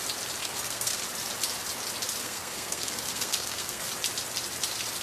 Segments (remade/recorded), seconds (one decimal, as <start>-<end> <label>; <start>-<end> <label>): 0.0-0.4 recorded; 0.4-1.0 remade; 1.0-2.2 recorded; 2.2-3.9 remade; 3.9-5.0 recorded